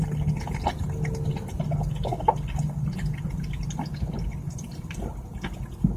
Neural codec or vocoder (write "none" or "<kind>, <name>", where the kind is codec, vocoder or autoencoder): none